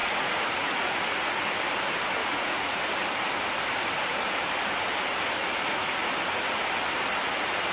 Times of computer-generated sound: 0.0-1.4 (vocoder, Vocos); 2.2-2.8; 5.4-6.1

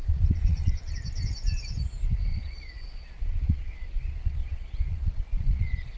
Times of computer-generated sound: 0.0-0.9 (vocoder, Vocos); 2.3-6.0

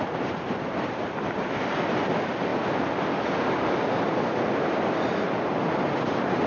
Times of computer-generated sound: none

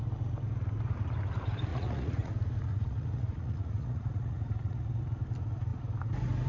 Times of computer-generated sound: 1.7-2.3 (vocoder, Vocos); 2.7-5.0

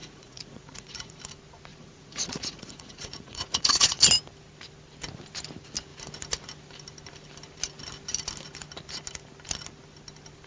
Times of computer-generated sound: 0.0-1.2 (vocoder, Vocos); 1.7-4.0

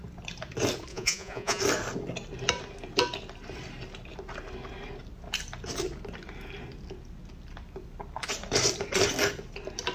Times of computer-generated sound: 0.9-1.6 (vocoder, Vocos)

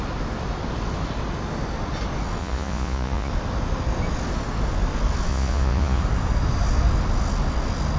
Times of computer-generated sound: 2.4-3.3 (vocoder, Vocos); 5.3-6.0

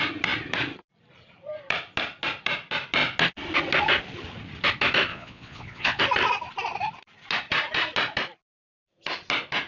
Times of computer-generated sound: 5.1-6.0 (vocoder, Vocos)